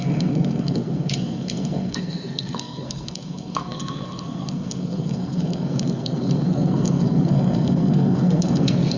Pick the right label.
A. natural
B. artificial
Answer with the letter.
B